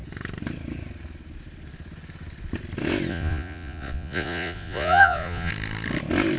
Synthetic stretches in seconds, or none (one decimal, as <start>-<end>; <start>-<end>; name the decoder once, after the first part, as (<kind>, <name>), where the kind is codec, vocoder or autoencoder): 3.1-5.5 (vocoder, Vocos)